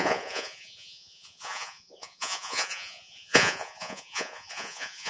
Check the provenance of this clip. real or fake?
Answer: fake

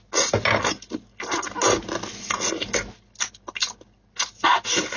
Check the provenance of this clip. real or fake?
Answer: real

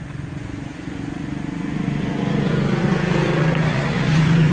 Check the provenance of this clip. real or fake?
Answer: fake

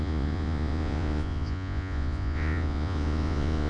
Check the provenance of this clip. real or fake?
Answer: fake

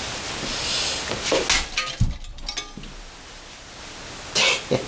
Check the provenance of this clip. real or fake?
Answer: real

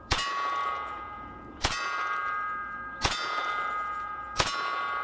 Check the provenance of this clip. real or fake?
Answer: fake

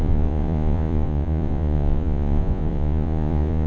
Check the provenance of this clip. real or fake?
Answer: fake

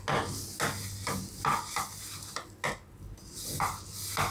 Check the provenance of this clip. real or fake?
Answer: real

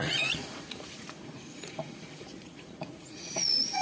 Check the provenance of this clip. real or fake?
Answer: fake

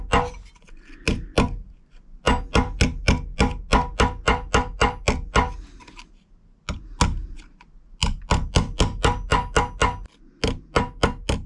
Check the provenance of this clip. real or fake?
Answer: real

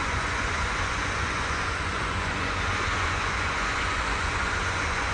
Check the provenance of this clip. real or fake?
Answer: fake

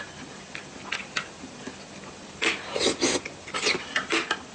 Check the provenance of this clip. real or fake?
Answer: real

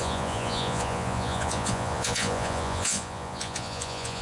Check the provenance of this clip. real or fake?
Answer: fake